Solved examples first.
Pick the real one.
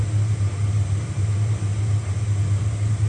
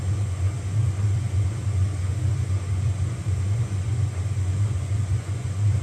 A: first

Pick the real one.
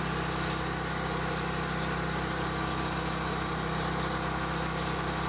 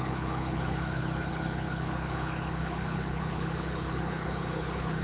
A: first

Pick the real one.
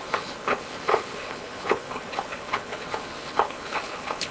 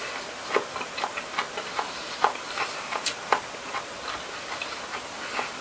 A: second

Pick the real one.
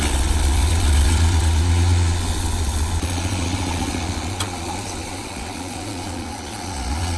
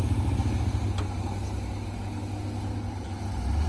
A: second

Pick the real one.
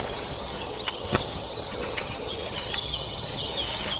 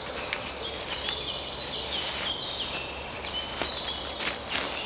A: second